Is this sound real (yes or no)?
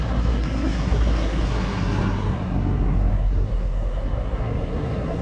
no